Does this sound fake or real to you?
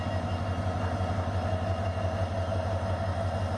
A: real